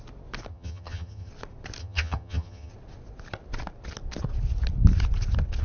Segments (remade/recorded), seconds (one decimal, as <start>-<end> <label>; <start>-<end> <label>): 0.0-0.5 recorded; 0.5-1.3 remade; 1.3-1.8 recorded; 1.8-2.7 remade; 2.7-5.6 recorded